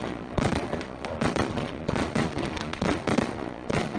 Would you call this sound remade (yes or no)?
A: yes